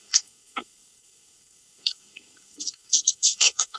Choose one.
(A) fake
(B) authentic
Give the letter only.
A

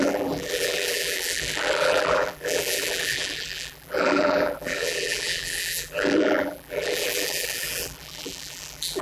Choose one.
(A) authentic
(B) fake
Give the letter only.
B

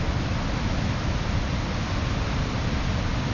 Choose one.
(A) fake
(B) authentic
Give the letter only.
B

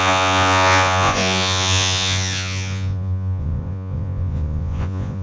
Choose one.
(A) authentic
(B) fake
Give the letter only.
B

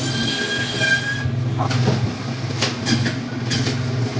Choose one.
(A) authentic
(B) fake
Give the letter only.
A